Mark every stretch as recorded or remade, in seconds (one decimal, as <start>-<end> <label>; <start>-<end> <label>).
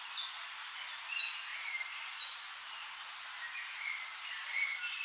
0.0-5.0 recorded